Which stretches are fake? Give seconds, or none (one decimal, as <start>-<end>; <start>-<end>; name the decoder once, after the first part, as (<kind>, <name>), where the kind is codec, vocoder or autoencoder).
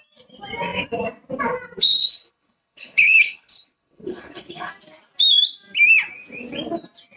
1.8-4.7 (codec, HILCodec)